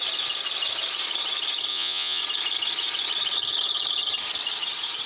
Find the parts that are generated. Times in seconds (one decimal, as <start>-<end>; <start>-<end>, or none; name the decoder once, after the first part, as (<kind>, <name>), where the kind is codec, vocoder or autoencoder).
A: 1.7-2.2 (vocoder, Vocos)